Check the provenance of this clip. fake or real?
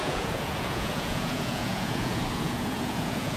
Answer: fake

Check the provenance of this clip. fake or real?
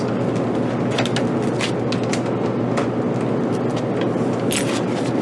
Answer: real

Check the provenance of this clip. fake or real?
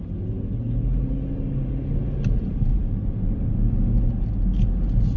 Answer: real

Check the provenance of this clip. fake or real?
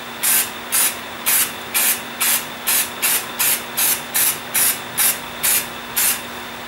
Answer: real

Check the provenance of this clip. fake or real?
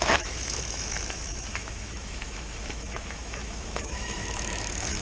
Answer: fake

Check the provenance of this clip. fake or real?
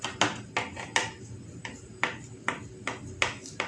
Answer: real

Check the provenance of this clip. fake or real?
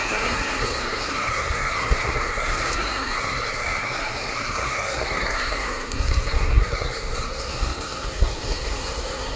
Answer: fake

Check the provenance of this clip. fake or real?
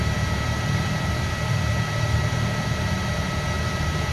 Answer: fake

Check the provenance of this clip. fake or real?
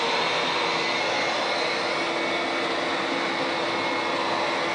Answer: real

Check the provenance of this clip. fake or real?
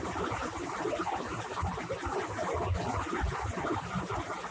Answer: real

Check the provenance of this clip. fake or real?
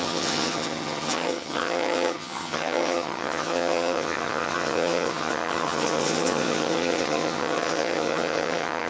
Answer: fake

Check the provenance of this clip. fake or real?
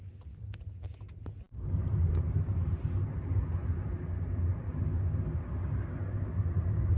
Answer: real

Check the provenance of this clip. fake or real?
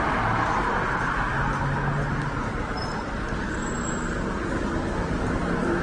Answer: real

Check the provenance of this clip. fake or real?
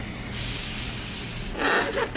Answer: real